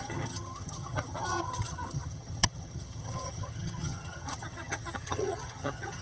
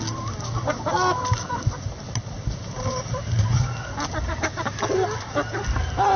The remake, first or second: first